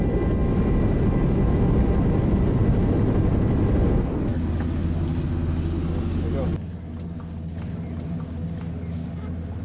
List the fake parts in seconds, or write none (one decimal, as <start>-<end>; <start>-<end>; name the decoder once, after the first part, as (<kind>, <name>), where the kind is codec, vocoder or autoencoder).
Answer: none